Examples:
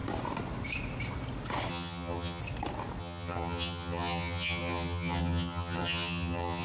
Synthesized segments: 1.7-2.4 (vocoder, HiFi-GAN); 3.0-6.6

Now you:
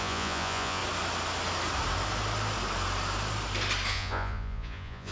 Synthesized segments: 0.0-0.8 (vocoder, Vocos); 3.9-5.1

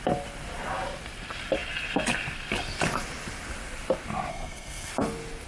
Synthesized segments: 4.3-4.9 (codec, SNAC)

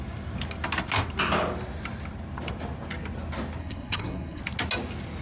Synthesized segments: 3.6-4.4 (codec, SNAC)

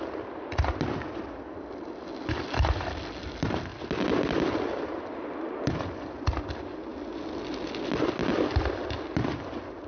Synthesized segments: none

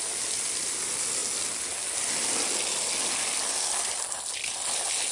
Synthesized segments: none